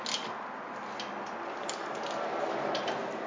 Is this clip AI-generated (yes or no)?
no